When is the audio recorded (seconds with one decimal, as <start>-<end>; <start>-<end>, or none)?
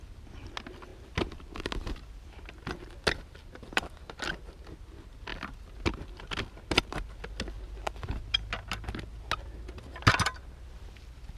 0.0-11.4